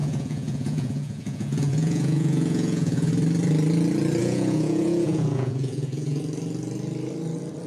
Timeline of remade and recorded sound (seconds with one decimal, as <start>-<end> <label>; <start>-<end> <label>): 0.0-3.1 remade; 3.1-4.2 recorded; 4.2-6.2 remade; 6.2-7.7 recorded